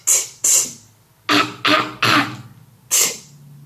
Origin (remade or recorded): recorded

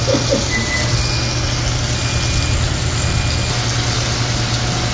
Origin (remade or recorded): recorded